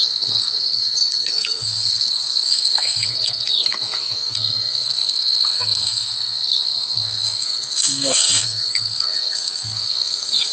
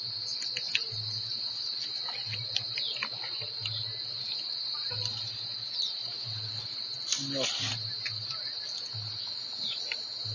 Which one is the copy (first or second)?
first